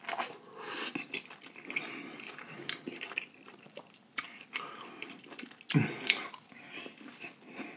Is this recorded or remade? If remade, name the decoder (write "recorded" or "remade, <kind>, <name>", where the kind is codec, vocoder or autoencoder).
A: recorded